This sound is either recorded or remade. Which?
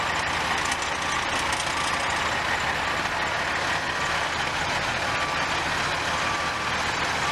recorded